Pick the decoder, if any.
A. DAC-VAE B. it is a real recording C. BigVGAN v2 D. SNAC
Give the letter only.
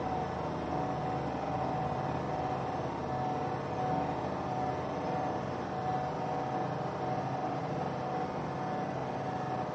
B